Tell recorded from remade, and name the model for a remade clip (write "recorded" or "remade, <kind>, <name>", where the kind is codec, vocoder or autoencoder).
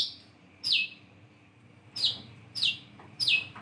remade, vocoder, BigVGAN v2